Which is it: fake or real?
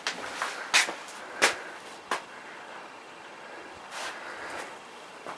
real